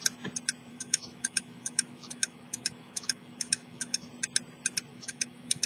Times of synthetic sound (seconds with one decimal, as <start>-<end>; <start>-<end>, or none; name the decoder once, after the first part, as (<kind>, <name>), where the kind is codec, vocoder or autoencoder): 0.7-4.1 (autoencoder, DAC-VAE); 4.9-5.7